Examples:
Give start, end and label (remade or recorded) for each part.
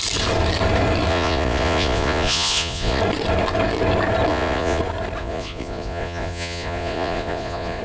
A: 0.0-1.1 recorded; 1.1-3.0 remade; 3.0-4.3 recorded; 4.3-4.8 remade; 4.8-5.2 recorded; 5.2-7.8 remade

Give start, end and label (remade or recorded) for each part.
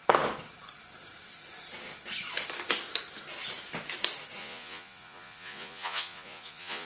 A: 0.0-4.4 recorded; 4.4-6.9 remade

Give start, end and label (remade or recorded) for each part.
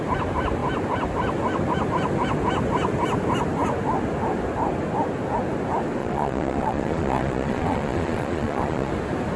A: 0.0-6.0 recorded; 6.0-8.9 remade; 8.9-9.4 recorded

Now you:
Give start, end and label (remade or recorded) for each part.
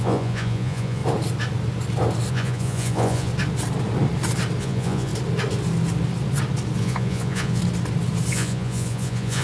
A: 0.0-1.0 remade; 1.0-2.3 recorded; 2.3-3.3 remade; 3.3-4.6 recorded; 4.6-5.1 remade; 5.1-6.8 recorded; 6.8-7.6 remade; 7.6-8.3 recorded; 8.3-9.4 remade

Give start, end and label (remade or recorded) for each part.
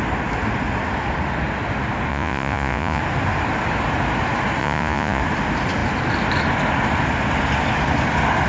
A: 0.0-2.1 recorded; 2.1-3.0 remade; 3.0-4.6 recorded; 4.6-5.2 remade; 5.2-8.5 recorded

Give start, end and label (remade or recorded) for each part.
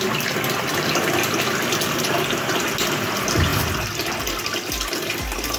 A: 0.0-5.6 recorded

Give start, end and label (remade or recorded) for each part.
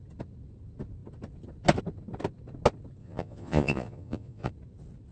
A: 0.0-3.0 recorded; 3.0-4.5 remade; 4.5-5.1 recorded